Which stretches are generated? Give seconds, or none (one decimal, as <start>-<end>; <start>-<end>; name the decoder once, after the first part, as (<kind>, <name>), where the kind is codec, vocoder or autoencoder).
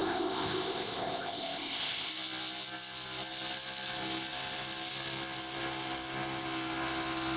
0.0-2.1 (codec, ZipCodec)